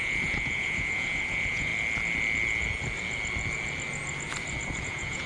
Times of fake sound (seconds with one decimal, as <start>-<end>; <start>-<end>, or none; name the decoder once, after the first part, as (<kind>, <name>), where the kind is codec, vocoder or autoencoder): 0.0-1.7 (vocoder, Vocos); 4.8-5.3